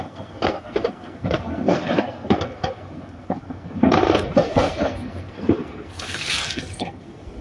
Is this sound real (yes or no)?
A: no